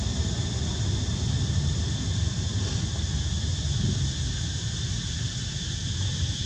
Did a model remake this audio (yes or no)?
no